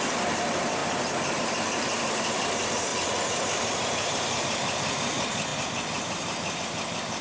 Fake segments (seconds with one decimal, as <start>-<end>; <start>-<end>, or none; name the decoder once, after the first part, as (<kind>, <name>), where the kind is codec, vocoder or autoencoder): 0.0-0.8 (vocoder, BigVGAN v2); 1.4-2.9; 3.8-7.2